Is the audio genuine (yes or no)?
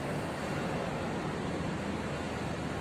yes